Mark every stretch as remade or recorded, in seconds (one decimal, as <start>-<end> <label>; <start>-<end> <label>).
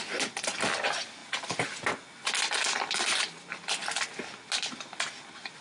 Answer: 0.0-5.6 recorded